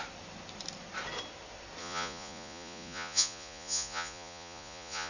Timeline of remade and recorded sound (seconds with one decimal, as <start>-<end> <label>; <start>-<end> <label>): 0.0-1.8 recorded; 1.8-5.1 remade